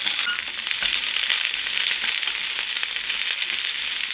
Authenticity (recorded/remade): recorded